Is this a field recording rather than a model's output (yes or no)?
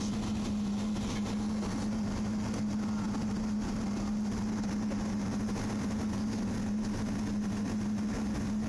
yes